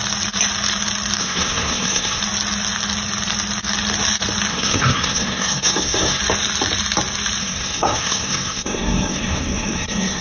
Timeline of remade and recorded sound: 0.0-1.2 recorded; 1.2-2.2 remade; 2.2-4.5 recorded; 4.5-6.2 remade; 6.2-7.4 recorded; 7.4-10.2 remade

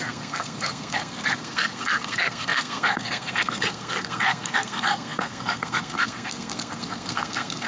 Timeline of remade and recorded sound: 0.0-7.7 remade

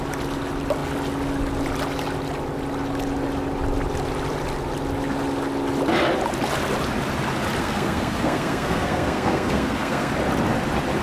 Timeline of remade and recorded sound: 0.0-7.6 recorded; 7.6-10.1 remade; 10.1-11.0 recorded

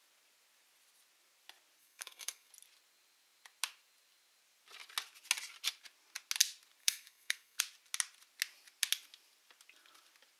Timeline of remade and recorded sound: 0.0-1.8 recorded; 1.8-2.5 remade; 2.5-6.8 recorded; 6.8-7.6 remade; 7.6-10.4 recorded

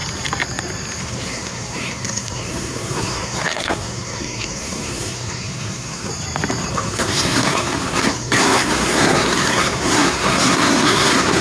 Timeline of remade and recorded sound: 0.0-1.0 recorded; 1.0-6.1 remade; 6.1-6.7 recorded; 6.7-11.4 remade

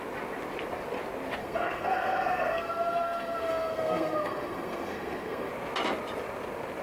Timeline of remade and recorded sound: 0.0-1.4 recorded; 1.4-5.5 remade; 5.5-6.8 recorded

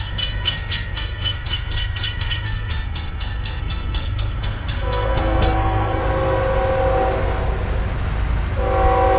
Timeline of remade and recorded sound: 0.0-6.0 remade; 6.0-9.2 recorded

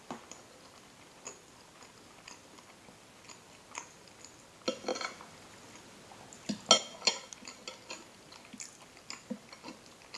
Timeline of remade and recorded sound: 0.0-10.2 recorded